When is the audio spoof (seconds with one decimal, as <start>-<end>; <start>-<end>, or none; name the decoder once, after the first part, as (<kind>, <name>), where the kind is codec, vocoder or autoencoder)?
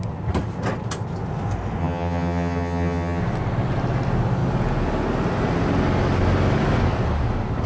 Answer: 1.8-3.2 (vocoder, HiFi-GAN)